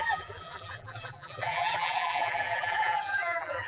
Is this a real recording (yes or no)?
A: no